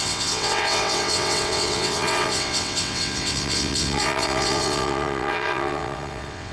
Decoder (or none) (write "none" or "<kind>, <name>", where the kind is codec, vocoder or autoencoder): vocoder, WaveNeXt